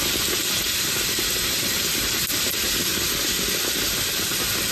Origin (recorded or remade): recorded